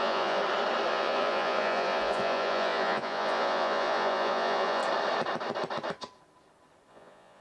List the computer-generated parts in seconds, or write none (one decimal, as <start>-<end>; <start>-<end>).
0.0-0.4; 0.9-4.8; 6.9-7.4